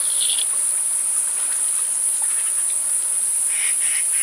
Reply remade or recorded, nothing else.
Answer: recorded